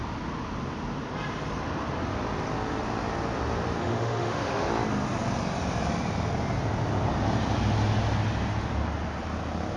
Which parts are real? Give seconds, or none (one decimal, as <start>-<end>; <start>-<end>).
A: 0.0-3.8; 4.7-9.8